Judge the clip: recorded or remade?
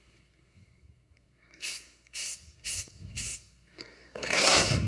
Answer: remade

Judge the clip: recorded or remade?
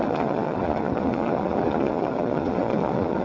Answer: remade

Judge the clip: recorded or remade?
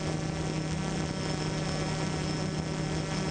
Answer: recorded